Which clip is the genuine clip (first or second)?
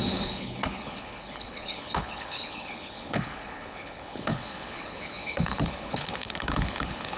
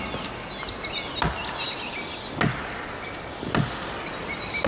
second